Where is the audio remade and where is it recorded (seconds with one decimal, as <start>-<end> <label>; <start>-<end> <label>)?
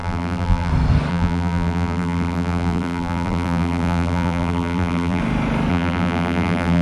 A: 0.0-0.7 remade; 0.7-1.1 recorded; 1.1-5.2 remade; 5.2-5.7 recorded; 5.7-6.8 remade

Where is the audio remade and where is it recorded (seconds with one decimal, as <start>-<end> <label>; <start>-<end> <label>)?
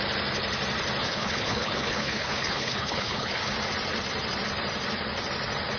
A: 0.0-1.0 recorded; 1.0-3.4 remade; 3.4-5.8 recorded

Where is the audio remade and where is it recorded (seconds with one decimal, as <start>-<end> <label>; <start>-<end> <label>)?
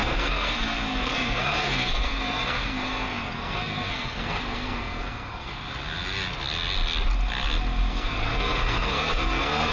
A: 0.0-5.5 remade; 5.5-7.9 recorded; 7.9-9.7 remade